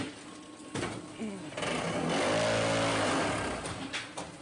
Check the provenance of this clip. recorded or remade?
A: recorded